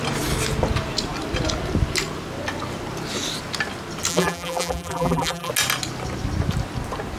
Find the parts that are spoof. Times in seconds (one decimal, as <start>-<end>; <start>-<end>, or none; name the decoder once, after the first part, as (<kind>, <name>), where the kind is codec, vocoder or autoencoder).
4.1-5.5 (vocoder, BigVGAN v2)